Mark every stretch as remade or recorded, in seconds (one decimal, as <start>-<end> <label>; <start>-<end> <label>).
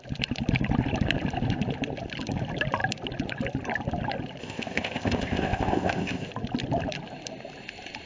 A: 0.0-4.4 recorded; 4.4-6.3 remade; 6.3-8.1 recorded